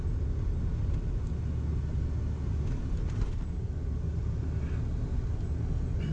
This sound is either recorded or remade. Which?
recorded